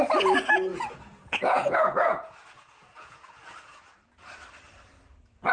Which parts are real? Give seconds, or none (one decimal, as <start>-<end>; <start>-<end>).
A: 0.0-0.7; 4.0-5.5